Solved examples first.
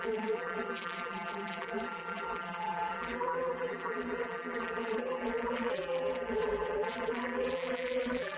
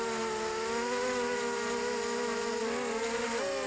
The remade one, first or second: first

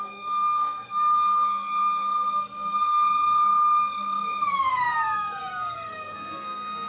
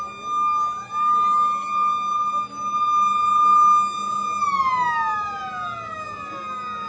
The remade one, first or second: first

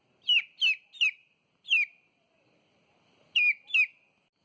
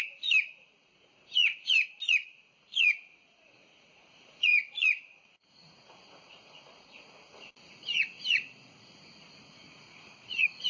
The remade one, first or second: second